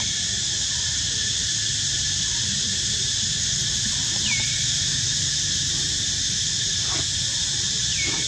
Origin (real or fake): fake